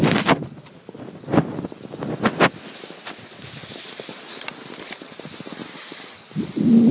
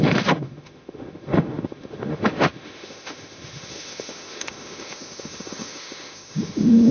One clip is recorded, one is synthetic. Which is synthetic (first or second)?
second